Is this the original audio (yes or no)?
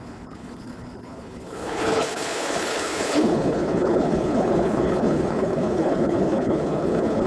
no